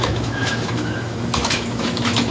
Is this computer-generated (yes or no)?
yes